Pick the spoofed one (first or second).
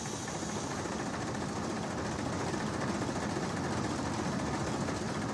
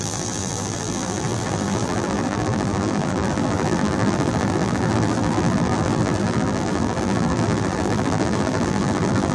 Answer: second